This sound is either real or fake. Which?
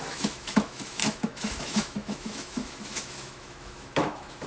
fake